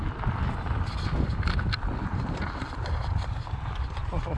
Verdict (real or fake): real